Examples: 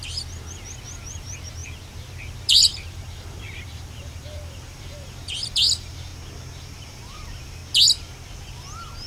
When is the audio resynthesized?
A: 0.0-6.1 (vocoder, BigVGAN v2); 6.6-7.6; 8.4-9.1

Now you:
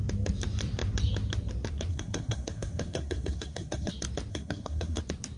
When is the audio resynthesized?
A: 1.9-3.9 (codec, SNAC); 4.3-5.0

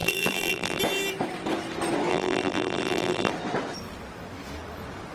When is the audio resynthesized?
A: 0.0-0.8 (vocoder, BigVGAN v2); 2.1-3.3

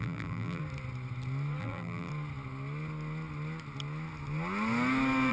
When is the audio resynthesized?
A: 0.0-0.6 (vocoder, BigVGAN v2); 1.6-2.1

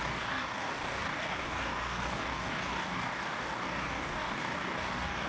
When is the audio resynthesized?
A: 0.0-5.3 (codec, DAC)

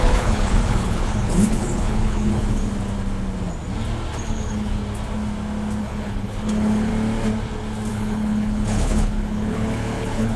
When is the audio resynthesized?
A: 0.0-2.6 (codec, HILCodec); 4.2-4.8; 5.8-6.9; 7.9-10.4